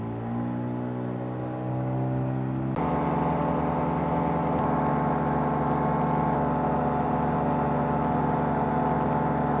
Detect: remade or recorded recorded